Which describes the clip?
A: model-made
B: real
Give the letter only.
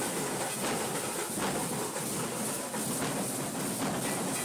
B